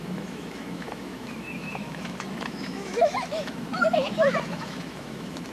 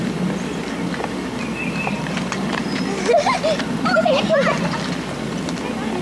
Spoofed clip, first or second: first